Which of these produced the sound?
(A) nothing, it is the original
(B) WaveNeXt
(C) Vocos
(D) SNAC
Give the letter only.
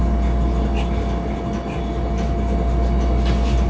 A